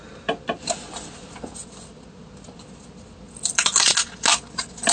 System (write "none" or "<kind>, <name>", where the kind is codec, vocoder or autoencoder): none